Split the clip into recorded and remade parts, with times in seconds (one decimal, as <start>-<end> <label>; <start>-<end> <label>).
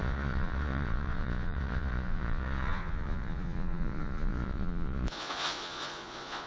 0.0-6.5 remade